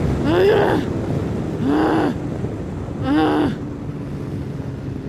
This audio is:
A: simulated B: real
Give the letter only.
B